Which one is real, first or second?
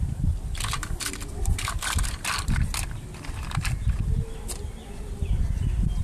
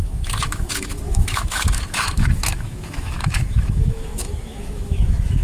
first